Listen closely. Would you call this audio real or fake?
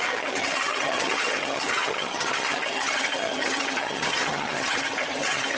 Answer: fake